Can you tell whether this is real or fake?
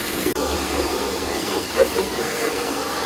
fake